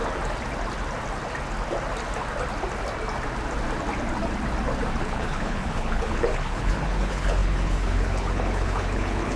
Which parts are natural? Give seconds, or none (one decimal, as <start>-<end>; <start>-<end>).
0.0-5.0